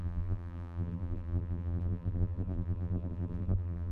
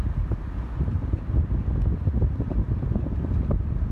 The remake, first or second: first